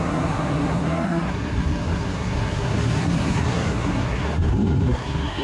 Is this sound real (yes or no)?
no